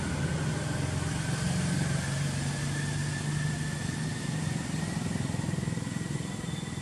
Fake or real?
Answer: real